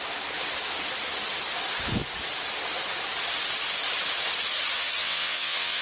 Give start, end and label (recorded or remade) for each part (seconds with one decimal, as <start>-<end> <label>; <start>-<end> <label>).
0.0-5.0 recorded; 5.0-5.8 remade